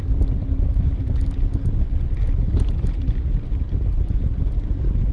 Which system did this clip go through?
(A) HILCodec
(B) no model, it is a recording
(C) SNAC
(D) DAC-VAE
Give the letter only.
B